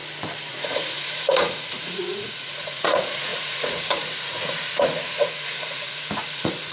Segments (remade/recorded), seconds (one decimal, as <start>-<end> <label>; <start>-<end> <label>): 0.0-0.5 recorded; 0.5-6.7 remade